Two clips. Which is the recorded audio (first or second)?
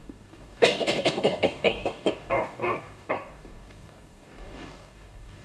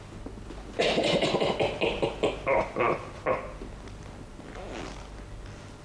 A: second